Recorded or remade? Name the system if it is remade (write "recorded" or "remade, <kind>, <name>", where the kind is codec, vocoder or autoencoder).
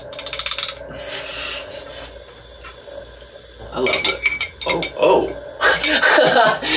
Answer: recorded